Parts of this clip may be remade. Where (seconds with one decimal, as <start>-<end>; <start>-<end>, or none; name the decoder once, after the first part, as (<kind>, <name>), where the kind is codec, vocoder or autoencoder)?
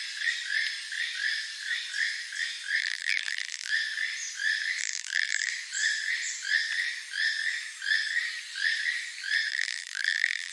2.8-3.7 (vocoder, BigVGAN v2); 4.8-5.5; 9.5-10.5